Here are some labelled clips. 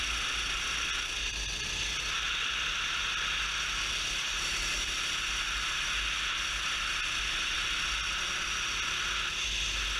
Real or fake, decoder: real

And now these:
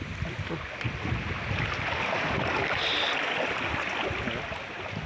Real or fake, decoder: real